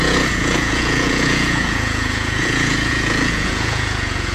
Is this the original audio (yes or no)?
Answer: no